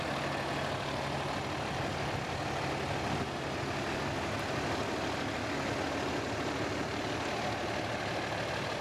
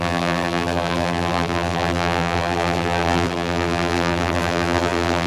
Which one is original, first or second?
first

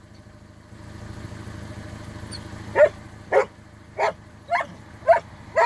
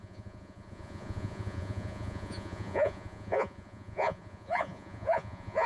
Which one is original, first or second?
first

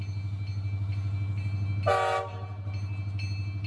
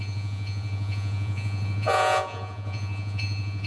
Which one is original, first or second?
first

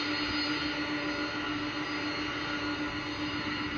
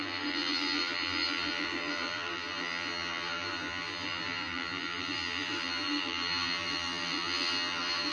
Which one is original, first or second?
first